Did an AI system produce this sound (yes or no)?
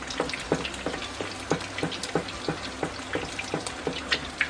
no